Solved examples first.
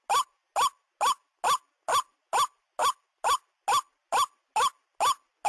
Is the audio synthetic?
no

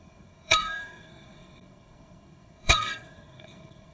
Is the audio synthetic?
yes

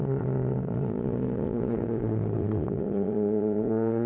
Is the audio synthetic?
yes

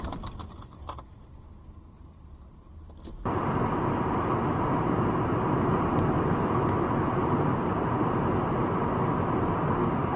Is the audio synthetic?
no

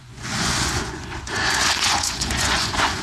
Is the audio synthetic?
yes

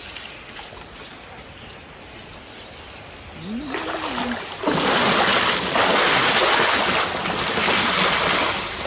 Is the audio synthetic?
no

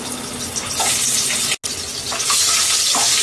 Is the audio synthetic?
no